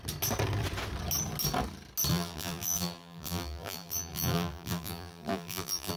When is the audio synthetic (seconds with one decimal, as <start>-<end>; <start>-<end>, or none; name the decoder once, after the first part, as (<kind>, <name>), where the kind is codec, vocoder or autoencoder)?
2.1-6.0 (vocoder, BigVGAN v2)